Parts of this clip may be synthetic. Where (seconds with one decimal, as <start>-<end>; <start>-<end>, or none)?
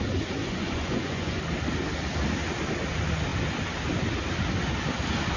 0.4-1.4